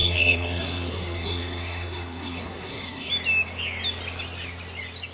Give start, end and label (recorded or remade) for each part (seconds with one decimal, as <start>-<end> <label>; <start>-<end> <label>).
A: 0.0-3.1 remade; 3.1-5.1 recorded